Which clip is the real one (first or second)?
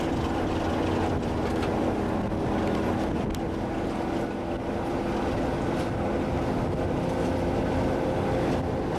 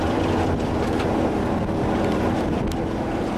first